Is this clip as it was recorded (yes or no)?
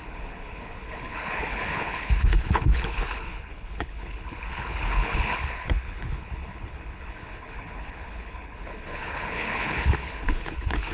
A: no